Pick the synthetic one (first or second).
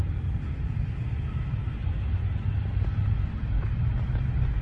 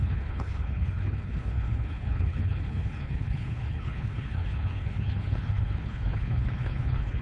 second